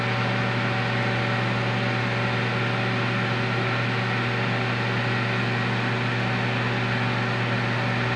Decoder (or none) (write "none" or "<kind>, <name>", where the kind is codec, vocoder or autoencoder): none